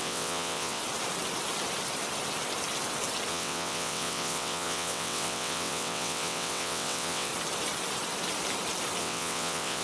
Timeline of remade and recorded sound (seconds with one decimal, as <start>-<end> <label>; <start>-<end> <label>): 0.0-0.8 remade; 0.8-3.3 recorded; 3.3-7.3 remade; 7.3-9.0 recorded; 9.0-9.8 remade